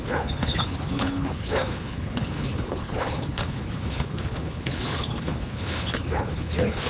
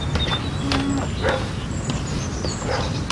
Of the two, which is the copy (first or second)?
first